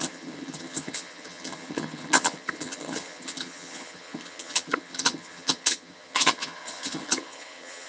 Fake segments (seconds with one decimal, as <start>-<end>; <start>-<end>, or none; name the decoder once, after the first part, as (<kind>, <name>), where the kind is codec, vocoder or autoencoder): 0.0-7.9 (vocoder, HiFi-GAN)